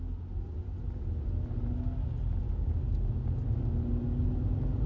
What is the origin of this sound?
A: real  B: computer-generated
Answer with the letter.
A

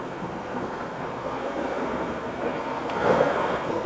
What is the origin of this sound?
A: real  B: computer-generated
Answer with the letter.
B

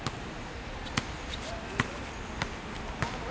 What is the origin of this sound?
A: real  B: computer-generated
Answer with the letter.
A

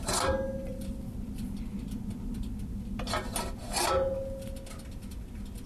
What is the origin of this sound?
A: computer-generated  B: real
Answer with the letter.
B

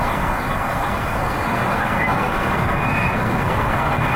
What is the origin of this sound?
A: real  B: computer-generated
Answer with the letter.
B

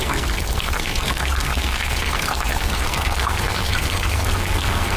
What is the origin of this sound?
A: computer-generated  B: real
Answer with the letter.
A